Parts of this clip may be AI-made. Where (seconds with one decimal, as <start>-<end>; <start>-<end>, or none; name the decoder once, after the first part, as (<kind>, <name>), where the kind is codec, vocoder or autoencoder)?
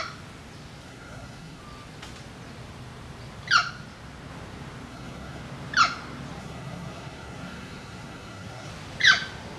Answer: 0.9-1.6 (codec, SNAC); 4.9-5.4; 6.4-8.7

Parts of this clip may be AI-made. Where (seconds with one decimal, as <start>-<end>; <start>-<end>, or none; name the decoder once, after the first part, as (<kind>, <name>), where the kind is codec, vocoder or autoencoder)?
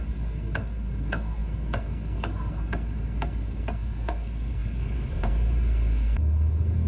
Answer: 0.0-6.9 (codec, SNAC)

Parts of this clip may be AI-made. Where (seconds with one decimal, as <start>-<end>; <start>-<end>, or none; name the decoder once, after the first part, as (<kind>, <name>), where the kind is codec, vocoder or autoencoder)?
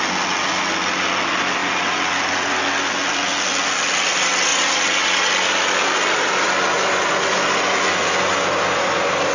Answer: none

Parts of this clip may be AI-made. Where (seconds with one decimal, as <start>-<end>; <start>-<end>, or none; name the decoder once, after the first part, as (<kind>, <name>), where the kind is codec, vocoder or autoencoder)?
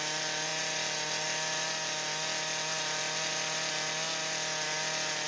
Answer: none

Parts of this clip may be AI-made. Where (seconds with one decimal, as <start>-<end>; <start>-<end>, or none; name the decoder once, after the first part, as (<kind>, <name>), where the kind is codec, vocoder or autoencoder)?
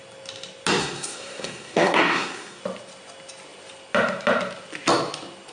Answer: 0.8-2.6 (codec, SNAC)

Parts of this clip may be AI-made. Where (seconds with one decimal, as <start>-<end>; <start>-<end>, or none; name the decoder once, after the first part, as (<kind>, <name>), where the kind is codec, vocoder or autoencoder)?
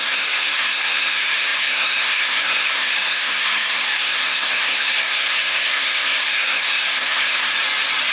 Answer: 0.0-7.5 (codec, SNAC)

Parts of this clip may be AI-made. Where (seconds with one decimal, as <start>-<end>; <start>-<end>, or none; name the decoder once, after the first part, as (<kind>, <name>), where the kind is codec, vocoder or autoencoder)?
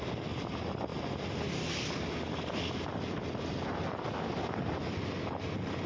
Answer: none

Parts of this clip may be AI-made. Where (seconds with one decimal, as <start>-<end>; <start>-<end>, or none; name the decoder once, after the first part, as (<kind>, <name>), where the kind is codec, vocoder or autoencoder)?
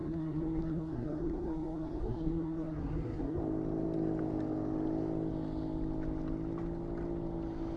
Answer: 0.0-3.4 (codec, SNAC)